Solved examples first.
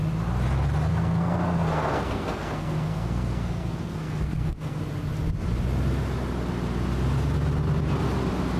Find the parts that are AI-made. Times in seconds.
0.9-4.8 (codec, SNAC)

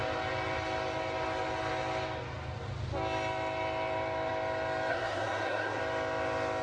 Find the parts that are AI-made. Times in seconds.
4.9-5.8 (codec, SNAC)

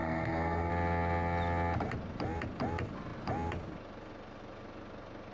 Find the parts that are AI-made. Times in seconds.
0.0-0.7 (codec, SNAC)

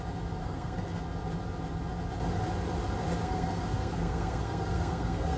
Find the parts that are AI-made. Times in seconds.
0.4-1.0 (codec, SNAC); 3.2-5.4

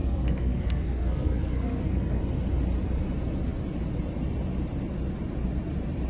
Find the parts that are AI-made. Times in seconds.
0.0-2.2 (codec, SNAC)

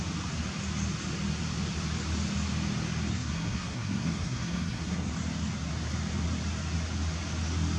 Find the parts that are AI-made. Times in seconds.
3.1-5.1 (codec, SNAC)

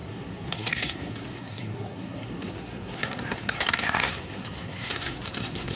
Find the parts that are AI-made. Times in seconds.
0.0-5.8 (codec, SNAC)

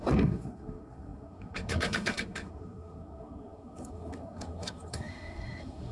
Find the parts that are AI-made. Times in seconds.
0.0-5.9 (codec, SNAC)